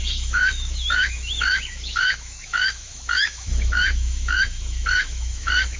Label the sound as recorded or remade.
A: remade